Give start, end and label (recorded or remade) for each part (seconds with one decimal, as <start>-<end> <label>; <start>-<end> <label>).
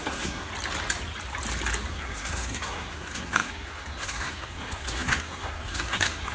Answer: 0.0-0.5 remade; 0.5-1.9 recorded; 1.9-6.3 remade